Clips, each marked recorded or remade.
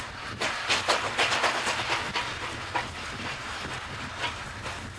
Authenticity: recorded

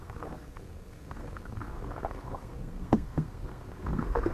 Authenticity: remade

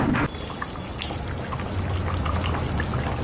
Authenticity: recorded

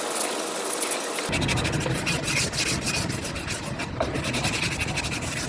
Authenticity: recorded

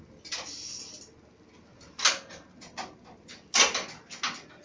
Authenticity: recorded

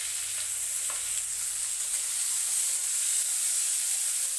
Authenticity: recorded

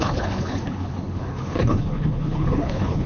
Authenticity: remade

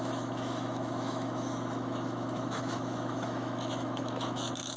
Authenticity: remade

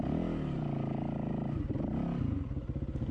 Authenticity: recorded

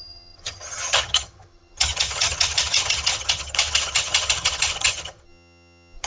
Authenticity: remade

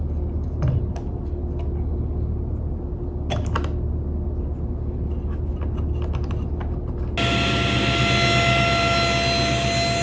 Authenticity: recorded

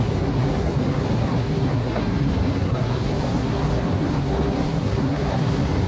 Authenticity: remade